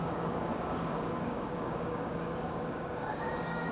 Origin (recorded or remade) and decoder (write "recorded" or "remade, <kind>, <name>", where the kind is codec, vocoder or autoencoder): remade, codec, DAC